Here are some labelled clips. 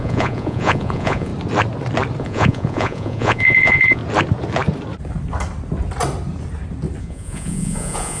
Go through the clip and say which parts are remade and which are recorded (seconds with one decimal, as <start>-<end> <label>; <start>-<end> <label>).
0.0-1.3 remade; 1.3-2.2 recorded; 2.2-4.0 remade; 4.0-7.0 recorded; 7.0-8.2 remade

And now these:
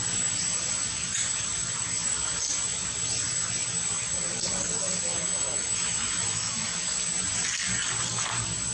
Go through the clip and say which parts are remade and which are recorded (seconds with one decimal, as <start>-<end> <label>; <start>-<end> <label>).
0.0-5.1 recorded; 5.1-6.8 remade; 6.8-8.7 recorded

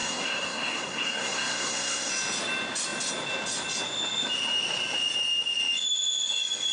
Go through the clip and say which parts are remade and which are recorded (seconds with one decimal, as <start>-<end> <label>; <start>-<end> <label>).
0.0-2.1 remade; 2.1-6.7 recorded

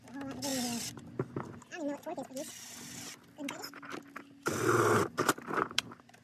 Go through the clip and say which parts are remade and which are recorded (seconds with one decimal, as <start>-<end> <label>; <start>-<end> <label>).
0.0-6.2 recorded

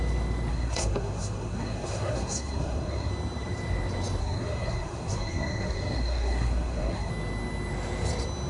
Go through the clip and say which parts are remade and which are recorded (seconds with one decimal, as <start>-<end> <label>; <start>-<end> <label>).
0.0-0.5 recorded; 0.5-3.1 remade; 3.1-4.2 recorded; 4.2-7.1 remade; 7.1-8.5 recorded

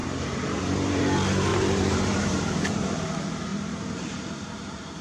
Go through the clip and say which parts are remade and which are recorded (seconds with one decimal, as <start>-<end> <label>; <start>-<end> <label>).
0.0-1.0 remade; 1.0-1.5 recorded; 1.5-3.0 remade; 3.0-3.5 recorded; 3.5-5.0 remade

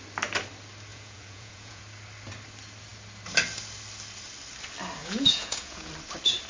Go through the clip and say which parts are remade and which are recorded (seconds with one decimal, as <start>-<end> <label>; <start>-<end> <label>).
0.0-0.9 recorded; 0.9-1.8 remade; 1.8-5.0 recorded; 5.0-5.9 remade; 5.9-6.5 recorded